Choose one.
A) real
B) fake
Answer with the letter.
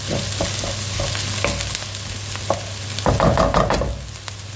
A